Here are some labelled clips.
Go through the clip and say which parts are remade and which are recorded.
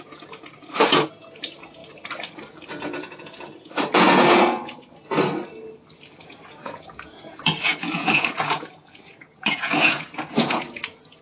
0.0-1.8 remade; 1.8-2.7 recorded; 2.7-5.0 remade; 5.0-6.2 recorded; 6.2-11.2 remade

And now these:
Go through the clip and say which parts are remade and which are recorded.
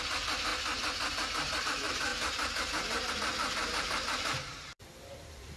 0.0-0.5 remade; 0.5-1.6 recorded; 1.6-2.1 remade; 2.1-3.1 recorded; 3.1-5.6 remade